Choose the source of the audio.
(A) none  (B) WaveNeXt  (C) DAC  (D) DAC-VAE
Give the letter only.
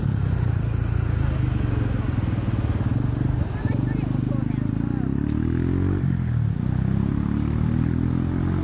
A